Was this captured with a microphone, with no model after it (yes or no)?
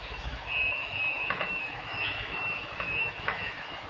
no